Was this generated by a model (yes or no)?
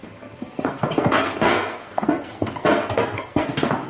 yes